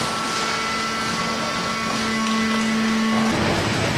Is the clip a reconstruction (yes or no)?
no